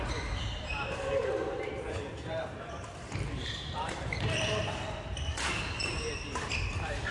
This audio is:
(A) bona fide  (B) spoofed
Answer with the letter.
B